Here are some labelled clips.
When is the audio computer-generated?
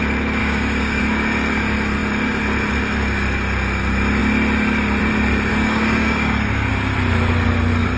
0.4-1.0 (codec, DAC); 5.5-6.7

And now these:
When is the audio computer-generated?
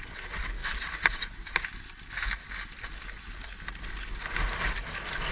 none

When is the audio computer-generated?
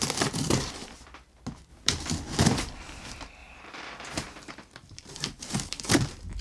3.4-6.4 (vocoder, BigVGAN v2)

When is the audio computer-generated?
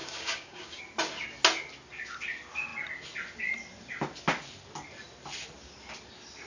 0.0-0.8 (codec, DAC)